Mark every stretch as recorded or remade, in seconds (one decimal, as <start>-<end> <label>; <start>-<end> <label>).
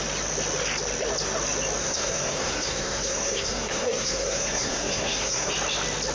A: 0.0-1.8 recorded; 1.8-5.5 remade; 5.5-6.1 recorded